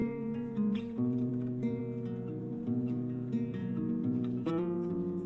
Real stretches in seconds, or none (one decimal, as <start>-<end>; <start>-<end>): 1.8-2.4